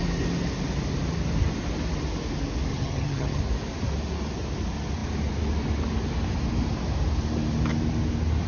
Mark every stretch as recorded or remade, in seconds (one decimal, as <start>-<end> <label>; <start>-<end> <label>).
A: 0.0-2.7 recorded; 2.7-3.4 remade; 3.4-8.5 recorded